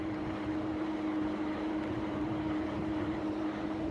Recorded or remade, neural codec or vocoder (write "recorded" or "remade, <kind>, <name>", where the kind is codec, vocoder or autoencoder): remade, vocoder, BigVGAN v2